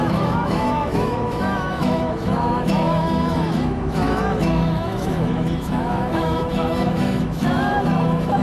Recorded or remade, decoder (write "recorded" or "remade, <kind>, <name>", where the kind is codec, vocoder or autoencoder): remade, autoencoder, DAC-VAE